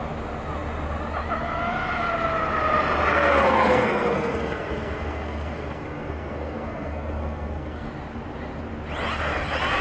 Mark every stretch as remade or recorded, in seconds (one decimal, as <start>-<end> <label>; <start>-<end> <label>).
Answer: 0.0-3.1 recorded; 3.1-7.9 remade; 7.9-9.8 recorded